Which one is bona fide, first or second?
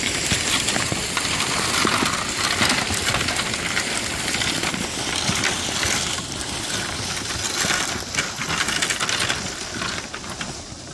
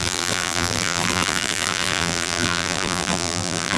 first